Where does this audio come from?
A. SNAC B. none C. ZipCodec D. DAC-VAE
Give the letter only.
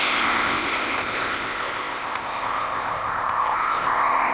C